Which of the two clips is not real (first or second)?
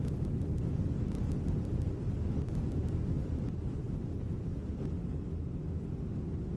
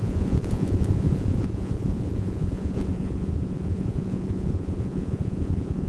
second